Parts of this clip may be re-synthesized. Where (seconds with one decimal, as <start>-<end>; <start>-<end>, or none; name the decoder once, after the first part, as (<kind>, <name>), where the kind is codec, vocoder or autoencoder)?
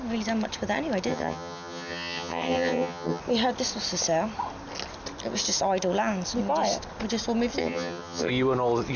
1.1-3.2 (vocoder, HiFi-GAN); 7.6-8.3